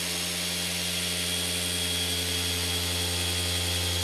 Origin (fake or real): real